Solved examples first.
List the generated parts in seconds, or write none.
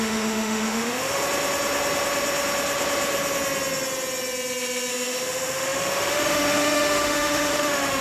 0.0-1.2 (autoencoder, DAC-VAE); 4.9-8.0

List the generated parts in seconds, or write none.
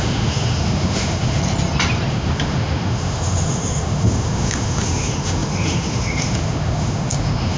0.0-1.4 (autoencoder, DAC-VAE); 2.1-7.6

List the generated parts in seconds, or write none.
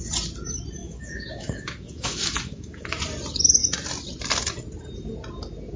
0.8-3.0 (autoencoder, DAC-VAE)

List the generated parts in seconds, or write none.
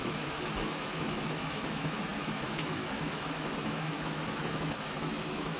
0.0-5.6 (autoencoder, DAC-VAE)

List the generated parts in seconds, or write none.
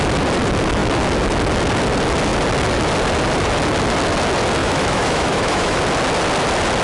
4.6-5.8 (autoencoder, DAC-VAE)